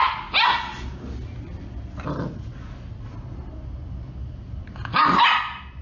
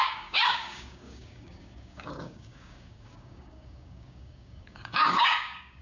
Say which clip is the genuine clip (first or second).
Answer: first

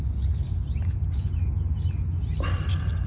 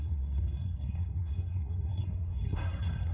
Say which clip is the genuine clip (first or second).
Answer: first